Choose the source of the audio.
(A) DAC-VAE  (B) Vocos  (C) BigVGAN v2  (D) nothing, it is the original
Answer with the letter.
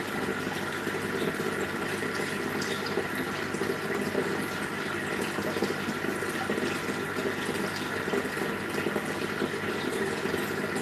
D